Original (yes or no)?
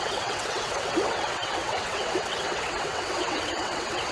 no